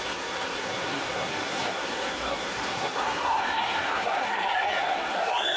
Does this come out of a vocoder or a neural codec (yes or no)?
yes